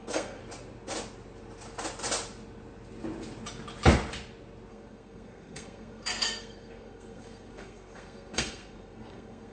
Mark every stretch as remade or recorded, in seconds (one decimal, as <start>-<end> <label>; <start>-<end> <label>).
0.0-0.4 remade; 0.4-4.7 recorded; 4.7-9.5 remade